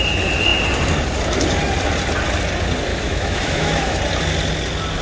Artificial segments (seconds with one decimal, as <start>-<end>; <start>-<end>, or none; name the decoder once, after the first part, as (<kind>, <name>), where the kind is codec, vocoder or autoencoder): 2.9-4.0 (autoencoder, DAC-VAE)